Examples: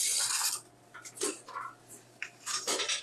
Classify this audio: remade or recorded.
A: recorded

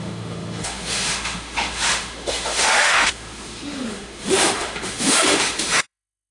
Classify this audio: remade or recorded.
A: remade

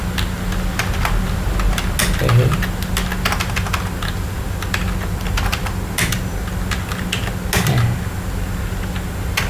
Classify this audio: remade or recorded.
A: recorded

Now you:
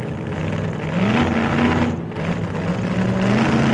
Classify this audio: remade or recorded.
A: recorded